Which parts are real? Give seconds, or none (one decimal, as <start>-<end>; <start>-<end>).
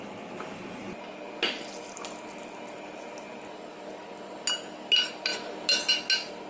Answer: 0.0-6.5